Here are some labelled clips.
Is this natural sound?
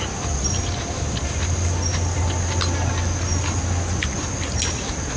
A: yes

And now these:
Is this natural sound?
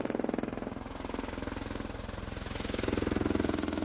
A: yes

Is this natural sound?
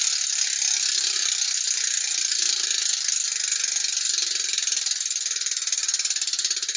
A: yes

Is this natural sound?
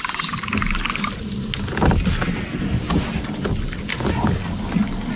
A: yes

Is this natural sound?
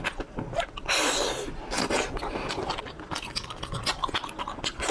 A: yes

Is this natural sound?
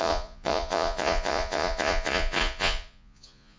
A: no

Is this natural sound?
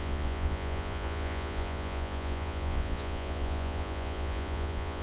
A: no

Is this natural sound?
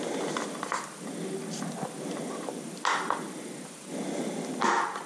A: yes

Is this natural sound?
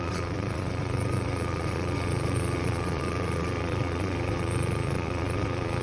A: no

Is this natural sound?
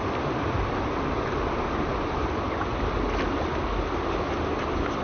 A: yes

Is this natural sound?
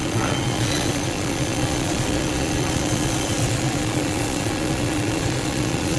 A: no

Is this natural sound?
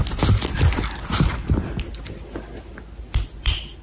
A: yes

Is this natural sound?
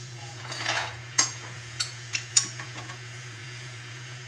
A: no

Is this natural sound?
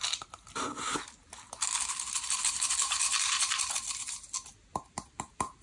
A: yes